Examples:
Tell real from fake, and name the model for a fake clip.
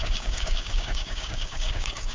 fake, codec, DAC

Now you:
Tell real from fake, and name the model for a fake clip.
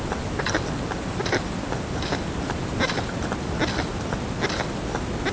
real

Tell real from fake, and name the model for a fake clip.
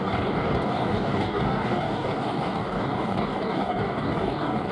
fake, codec, DAC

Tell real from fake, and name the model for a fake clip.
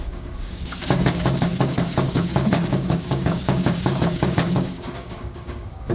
fake, codec, DAC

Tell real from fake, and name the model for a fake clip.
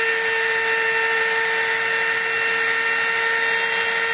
real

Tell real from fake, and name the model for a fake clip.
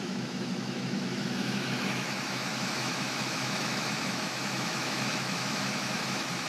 fake, autoencoder, DAC-VAE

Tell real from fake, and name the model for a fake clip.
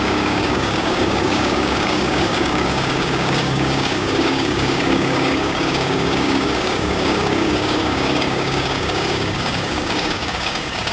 fake, codec, DAC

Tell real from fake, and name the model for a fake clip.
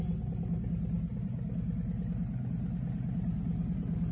real